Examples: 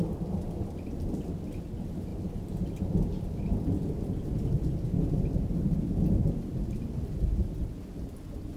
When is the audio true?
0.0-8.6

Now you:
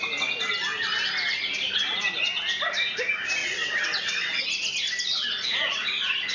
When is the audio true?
0.0-3.4; 4.4-6.3